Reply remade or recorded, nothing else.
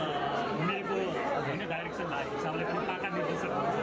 recorded